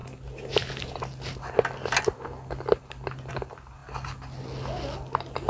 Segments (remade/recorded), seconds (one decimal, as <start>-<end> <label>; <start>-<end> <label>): 0.0-5.5 recorded